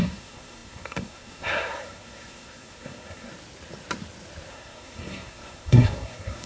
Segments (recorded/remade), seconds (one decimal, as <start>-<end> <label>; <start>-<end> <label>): 0.0-3.3 remade; 3.3-4.5 recorded; 4.5-6.5 remade